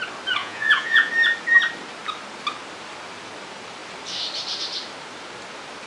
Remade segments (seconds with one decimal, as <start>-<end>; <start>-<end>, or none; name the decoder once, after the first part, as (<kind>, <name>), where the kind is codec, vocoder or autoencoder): 0.4-1.1 (vocoder, Vocos)